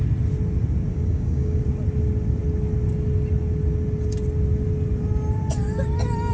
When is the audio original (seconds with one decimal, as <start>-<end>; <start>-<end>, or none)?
0.0-0.9; 1.6-6.3